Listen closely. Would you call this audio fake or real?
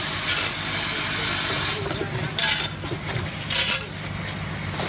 real